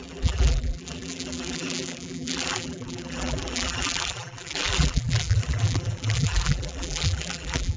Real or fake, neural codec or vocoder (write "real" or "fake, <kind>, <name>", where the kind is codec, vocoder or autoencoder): fake, vocoder, BigVGAN v2